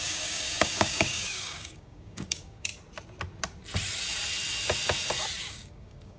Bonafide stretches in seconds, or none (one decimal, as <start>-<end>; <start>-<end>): 2.7-5.5

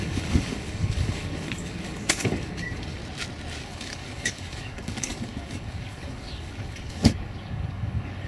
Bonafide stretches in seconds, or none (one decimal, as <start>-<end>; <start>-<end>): 3.0-3.6